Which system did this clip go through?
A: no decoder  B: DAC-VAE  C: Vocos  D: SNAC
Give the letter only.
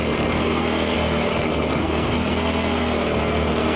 D